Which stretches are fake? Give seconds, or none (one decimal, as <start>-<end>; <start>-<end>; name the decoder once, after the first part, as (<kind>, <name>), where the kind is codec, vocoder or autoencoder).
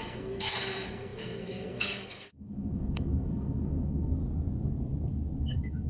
0.0-4.2 (codec, SNAC); 5.4-5.9